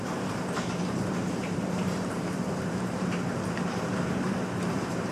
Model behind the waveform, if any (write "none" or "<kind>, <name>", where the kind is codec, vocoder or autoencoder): vocoder, BigVGAN v2